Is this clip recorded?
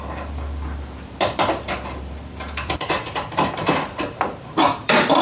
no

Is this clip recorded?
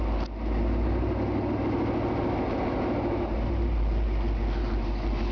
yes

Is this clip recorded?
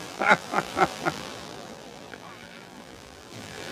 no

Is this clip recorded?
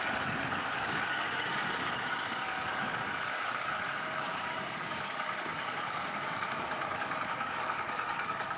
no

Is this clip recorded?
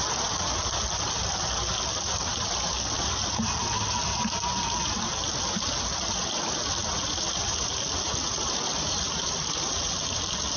yes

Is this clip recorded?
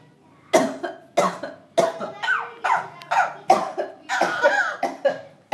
yes